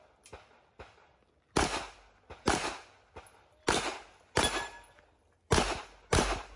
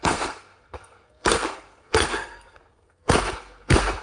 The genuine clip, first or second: first